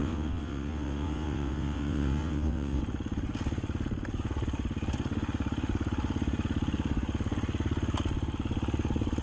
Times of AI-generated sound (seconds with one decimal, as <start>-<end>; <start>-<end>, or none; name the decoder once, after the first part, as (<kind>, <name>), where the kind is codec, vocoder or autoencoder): 0.0-2.8 (vocoder, WaveNeXt)